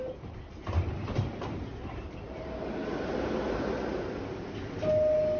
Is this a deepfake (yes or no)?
no